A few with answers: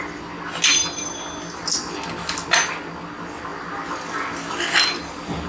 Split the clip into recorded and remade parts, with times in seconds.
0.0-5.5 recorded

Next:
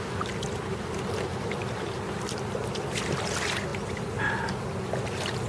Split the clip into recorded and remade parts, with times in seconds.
0.0-5.5 recorded

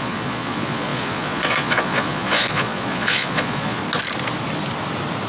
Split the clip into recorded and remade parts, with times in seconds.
0.0-3.8 remade; 3.8-5.3 recorded

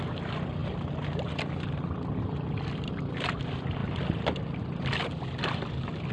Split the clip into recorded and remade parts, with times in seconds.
0.0-6.1 recorded

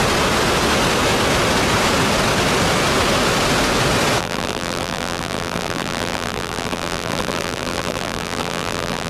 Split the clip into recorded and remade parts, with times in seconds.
0.0-4.2 recorded; 4.2-9.1 remade

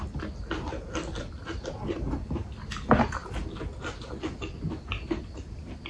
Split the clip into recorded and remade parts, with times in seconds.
0.0-1.0 recorded; 1.0-1.7 remade; 1.7-5.9 recorded

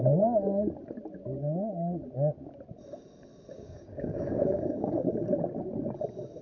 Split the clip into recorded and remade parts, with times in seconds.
0.0-3.5 recorded; 3.5-5.1 remade; 5.1-6.4 recorded

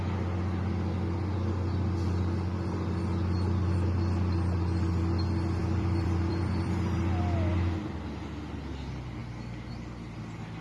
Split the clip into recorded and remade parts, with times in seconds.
0.0-5.6 recorded; 5.6-7.1 remade; 7.1-10.6 recorded